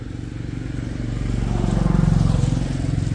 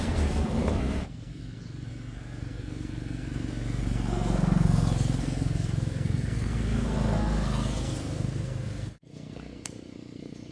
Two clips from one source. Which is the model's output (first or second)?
second